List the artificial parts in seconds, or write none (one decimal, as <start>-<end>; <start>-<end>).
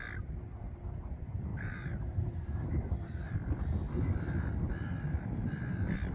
1.5-3.2